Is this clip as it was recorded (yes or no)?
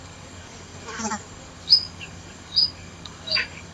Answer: no